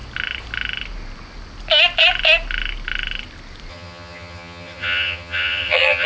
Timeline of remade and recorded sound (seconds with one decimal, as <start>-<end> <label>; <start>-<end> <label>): 0.0-3.7 recorded; 3.7-6.1 remade